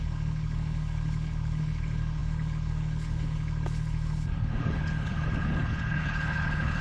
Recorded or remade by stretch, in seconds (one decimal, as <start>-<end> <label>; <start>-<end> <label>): 0.0-6.8 remade